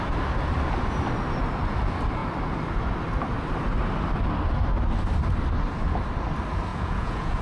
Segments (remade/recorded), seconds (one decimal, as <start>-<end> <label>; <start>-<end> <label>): 0.0-6.7 recorded; 6.7-7.4 remade

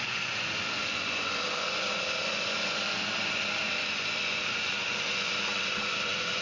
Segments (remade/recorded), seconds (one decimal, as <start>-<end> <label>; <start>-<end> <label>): 0.0-6.4 remade

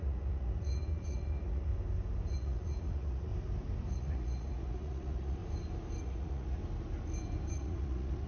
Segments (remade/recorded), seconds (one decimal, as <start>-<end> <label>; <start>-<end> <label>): 0.0-1.7 remade; 1.7-2.3 recorded; 2.3-3.3 remade; 3.3-3.9 recorded; 3.9-5.4 remade; 5.4-6.0 recorded; 6.0-6.6 remade; 6.6-7.5 recorded; 7.5-8.3 remade

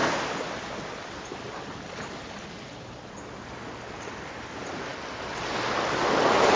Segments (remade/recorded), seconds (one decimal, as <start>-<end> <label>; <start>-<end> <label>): 0.0-6.6 recorded

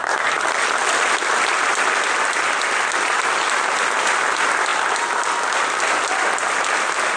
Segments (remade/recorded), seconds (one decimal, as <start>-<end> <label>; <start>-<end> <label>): 0.0-7.2 recorded

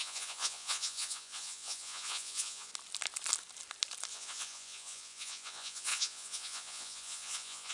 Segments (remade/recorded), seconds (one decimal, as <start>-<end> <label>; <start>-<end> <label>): 0.0-2.7 remade; 2.7-4.1 recorded; 4.1-7.7 remade

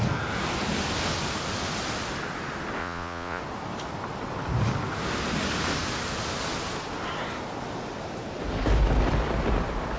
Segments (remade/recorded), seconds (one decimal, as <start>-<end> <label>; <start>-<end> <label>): 0.0-2.8 recorded; 2.8-3.4 remade; 3.4-10.0 recorded